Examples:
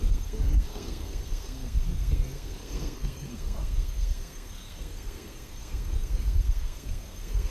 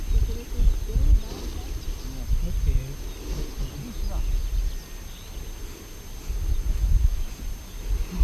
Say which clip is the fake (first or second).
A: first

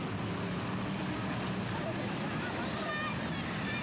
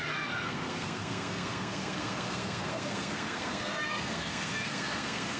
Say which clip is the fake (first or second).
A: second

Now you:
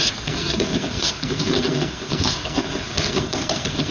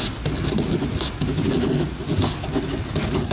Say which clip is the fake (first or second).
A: first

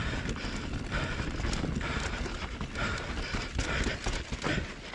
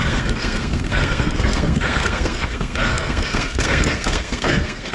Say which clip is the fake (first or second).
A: second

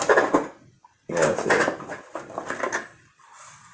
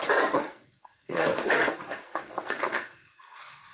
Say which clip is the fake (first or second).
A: second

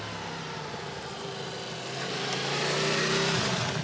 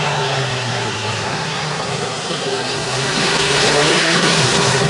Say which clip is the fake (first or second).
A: second